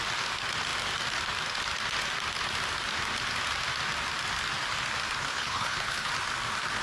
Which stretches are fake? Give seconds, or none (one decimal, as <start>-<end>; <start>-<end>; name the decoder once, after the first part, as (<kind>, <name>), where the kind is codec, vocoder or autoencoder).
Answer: 5.3-6.1 (codec, HILCodec)